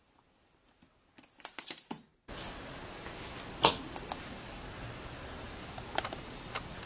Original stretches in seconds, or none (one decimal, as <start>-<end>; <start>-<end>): 0.0-6.9